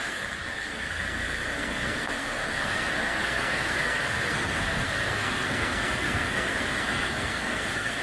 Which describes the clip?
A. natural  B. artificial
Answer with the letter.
B